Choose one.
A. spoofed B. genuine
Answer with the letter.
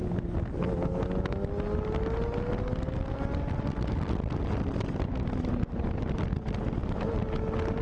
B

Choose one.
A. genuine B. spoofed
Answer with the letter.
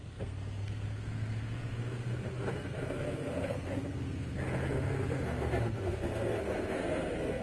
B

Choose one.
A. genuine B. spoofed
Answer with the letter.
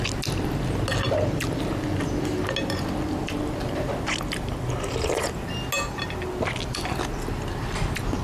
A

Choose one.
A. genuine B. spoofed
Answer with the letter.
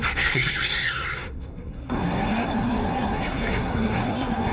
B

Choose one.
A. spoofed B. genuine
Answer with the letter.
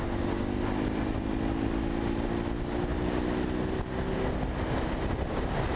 B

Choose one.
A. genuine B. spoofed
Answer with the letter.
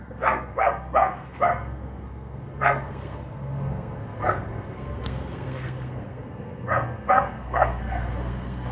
B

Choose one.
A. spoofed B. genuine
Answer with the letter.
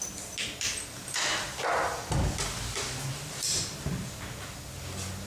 B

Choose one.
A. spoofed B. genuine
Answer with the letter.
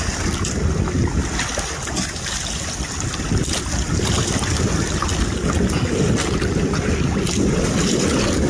B